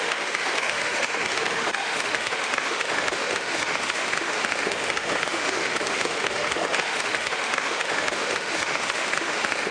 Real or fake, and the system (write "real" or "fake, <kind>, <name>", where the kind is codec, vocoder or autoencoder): fake, autoencoder, DAC-VAE